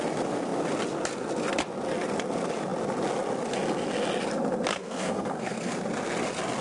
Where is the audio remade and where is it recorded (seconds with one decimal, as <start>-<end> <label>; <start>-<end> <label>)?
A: 0.0-4.7 recorded; 4.7-5.7 remade; 5.7-6.6 recorded